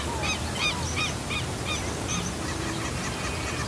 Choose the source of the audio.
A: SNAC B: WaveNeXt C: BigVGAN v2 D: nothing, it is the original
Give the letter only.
D